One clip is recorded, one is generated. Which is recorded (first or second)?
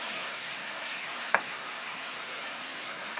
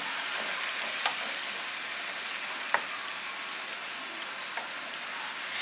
second